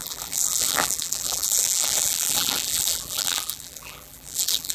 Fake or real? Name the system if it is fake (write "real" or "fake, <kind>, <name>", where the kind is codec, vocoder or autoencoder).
fake, vocoder, BigVGAN v2